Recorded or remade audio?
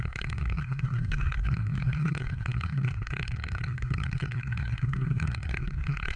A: remade